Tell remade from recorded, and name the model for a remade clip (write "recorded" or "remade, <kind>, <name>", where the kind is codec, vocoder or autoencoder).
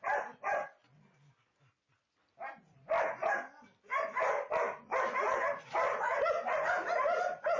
recorded